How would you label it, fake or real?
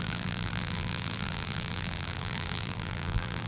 fake